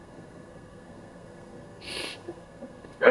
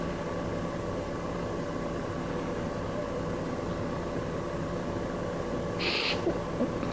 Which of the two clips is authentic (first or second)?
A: second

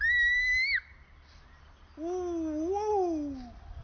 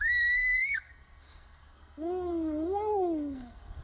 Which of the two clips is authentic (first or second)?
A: first